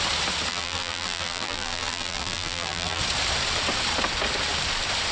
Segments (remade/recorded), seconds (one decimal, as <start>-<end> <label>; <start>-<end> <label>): 0.0-0.5 recorded; 0.5-3.0 remade; 3.0-5.1 recorded